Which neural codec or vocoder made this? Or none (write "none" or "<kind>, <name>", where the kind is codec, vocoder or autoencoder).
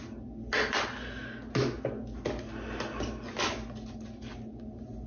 none